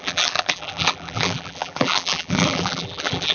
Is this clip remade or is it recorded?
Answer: remade